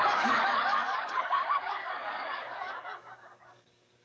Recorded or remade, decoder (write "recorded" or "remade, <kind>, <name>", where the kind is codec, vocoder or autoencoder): remade, codec, DAC